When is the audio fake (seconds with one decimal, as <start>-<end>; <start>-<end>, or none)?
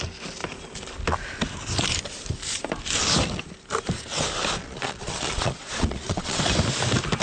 4.6-6.4